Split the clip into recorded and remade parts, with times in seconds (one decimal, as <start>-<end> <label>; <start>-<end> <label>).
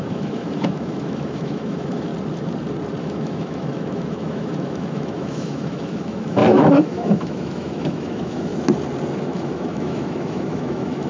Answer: 0.0-2.1 remade; 2.1-3.0 recorded; 3.0-8.5 remade; 8.5-9.1 recorded; 9.1-11.1 remade